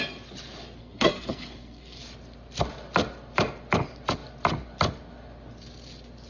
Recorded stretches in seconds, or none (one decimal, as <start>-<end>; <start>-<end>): 0.0-0.8; 2.0-6.3